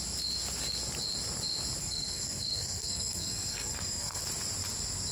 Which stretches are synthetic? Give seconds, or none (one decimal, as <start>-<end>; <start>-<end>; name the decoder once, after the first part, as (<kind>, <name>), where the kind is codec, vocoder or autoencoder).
1.8-4.2 (codec, SNAC)